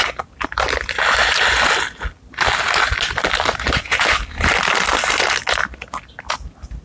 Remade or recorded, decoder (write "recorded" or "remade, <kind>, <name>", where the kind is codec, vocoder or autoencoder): recorded